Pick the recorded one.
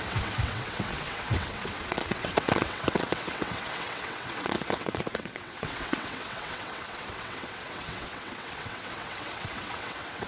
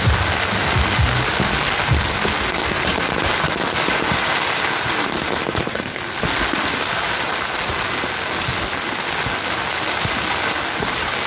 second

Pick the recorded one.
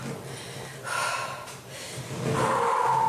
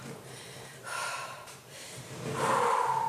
first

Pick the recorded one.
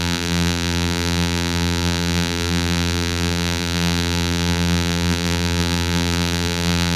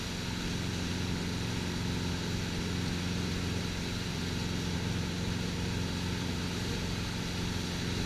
second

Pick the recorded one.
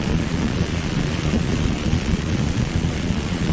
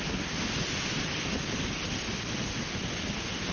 second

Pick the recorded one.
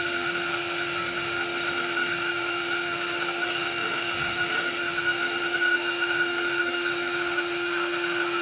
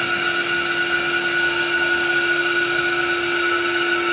second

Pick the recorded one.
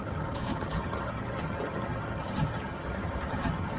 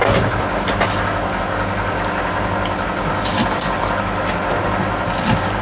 second